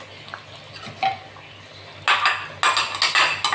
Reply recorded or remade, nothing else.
recorded